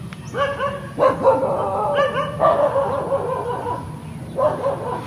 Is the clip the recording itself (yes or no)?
yes